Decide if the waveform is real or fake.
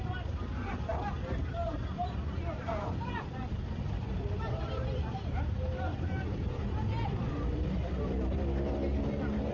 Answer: fake